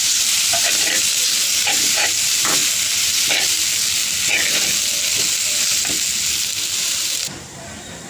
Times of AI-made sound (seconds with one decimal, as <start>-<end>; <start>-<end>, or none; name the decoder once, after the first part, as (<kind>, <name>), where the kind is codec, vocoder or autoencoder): 0.0-2.6 (vocoder, BigVGAN v2); 6.7-8.1